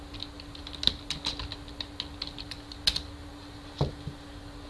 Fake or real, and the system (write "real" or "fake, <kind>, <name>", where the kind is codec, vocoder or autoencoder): real